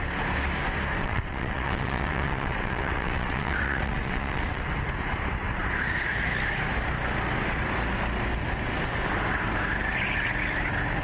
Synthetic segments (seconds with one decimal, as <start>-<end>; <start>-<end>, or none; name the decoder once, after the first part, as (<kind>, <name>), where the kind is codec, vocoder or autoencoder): 1.0-4.7 (vocoder, WaveNeXt)